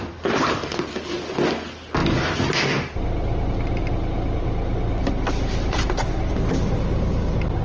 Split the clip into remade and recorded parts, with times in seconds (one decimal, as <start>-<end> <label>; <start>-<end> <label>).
0.0-7.6 recorded

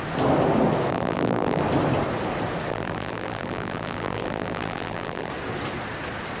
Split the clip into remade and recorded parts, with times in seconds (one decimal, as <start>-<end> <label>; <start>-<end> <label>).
0.0-0.9 recorded; 0.9-1.6 remade; 1.6-2.7 recorded; 2.7-5.3 remade; 5.3-6.4 recorded

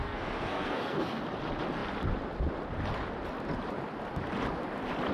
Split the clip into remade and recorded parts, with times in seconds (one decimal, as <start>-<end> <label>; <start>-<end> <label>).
0.0-1.2 remade; 1.2-5.1 recorded

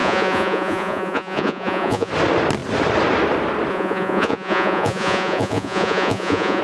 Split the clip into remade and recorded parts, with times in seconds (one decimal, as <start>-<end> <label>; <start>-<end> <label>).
0.0-2.1 remade; 2.1-3.7 recorded; 3.7-6.6 remade

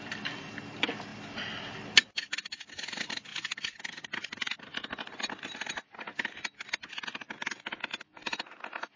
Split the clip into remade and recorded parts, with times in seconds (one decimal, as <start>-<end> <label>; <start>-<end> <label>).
0.0-9.0 recorded

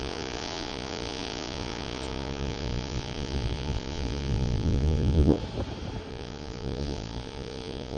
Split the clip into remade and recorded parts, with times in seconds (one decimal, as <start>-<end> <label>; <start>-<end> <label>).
0.0-5.4 remade; 5.4-6.1 recorded; 6.1-8.0 remade

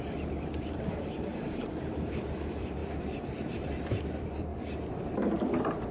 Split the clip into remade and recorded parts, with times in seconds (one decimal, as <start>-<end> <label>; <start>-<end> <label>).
0.0-2.8 remade; 2.8-3.5 recorded; 3.5-4.5 remade; 4.5-5.5 recorded; 5.5-5.9 remade